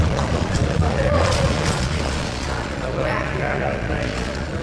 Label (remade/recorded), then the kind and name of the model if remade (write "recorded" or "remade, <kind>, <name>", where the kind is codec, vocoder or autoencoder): remade, vocoder, Vocos